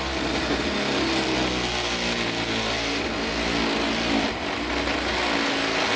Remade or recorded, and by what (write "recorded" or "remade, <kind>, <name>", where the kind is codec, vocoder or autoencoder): recorded